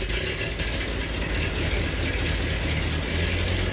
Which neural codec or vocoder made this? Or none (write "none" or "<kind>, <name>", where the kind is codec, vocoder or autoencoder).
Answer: none